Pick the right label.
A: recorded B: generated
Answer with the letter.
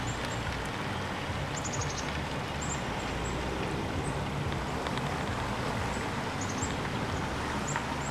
A